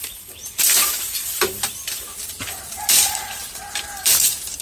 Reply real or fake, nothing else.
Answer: fake